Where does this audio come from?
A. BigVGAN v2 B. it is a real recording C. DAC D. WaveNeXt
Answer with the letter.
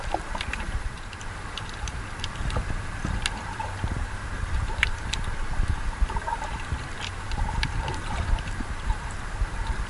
A